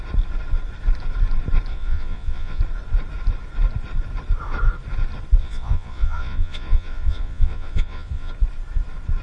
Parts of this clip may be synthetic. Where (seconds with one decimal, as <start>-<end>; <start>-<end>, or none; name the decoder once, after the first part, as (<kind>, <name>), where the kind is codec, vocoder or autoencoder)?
1.7-2.6 (vocoder, Vocos); 5.4-8.3